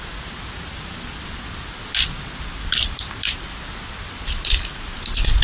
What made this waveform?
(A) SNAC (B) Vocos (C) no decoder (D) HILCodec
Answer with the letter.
C